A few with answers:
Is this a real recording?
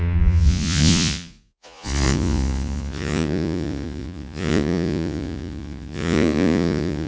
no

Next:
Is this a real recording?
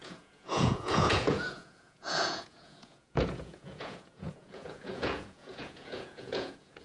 no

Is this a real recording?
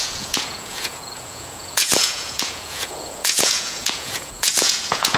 no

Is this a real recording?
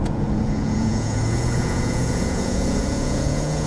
no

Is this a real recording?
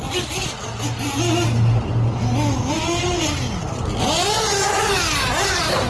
yes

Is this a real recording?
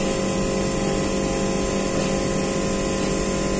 yes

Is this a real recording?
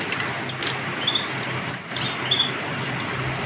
yes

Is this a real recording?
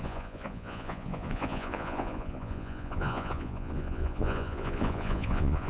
no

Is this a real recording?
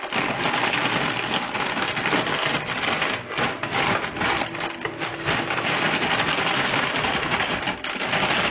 yes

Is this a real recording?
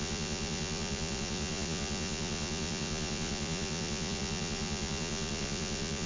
no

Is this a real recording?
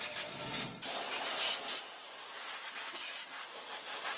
yes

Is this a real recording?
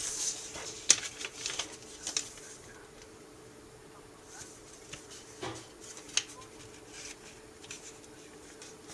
yes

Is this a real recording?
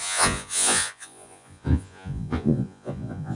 no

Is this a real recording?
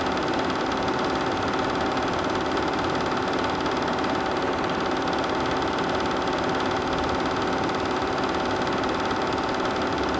yes